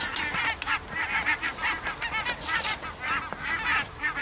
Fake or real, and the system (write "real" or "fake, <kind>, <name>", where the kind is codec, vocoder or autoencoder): real